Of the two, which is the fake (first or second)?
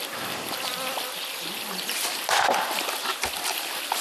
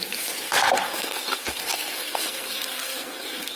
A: second